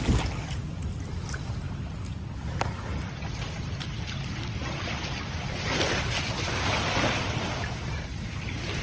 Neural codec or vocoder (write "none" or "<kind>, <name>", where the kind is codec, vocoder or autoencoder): none